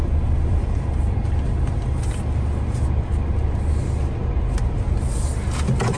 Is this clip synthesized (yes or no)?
no